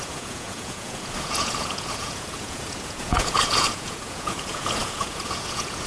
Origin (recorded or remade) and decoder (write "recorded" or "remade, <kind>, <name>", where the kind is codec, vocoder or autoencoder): remade, vocoder, Vocos